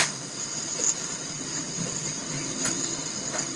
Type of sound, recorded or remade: remade